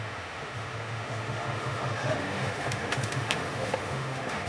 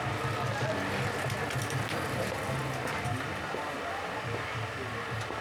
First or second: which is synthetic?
first